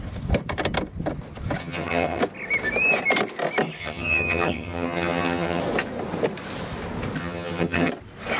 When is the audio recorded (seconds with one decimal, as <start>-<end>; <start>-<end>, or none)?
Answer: 0.0-1.6; 2.2-3.8; 5.6-7.2; 7.9-8.4